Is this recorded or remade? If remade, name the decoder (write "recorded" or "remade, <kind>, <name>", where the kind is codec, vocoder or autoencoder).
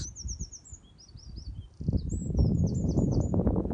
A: recorded